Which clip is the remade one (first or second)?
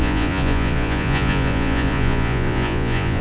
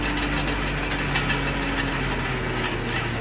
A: first